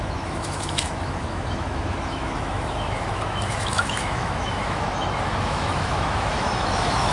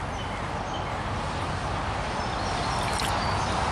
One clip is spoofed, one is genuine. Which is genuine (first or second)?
second